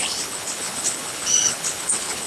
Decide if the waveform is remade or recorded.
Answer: remade